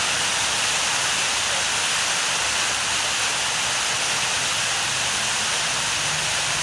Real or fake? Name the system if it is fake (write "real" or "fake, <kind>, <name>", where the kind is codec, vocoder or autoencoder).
real